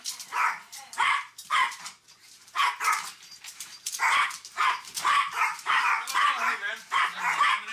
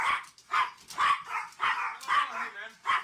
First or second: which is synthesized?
first